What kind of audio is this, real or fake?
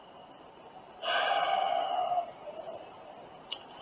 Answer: real